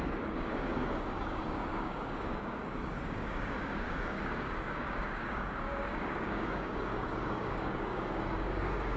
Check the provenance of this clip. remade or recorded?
remade